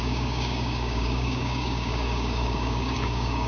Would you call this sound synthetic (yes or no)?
yes